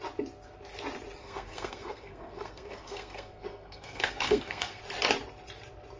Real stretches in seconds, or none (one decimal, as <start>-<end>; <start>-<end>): 0.0-1.2; 4.8-6.0